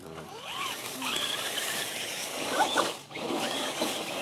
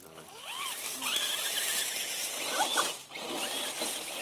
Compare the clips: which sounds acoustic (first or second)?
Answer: second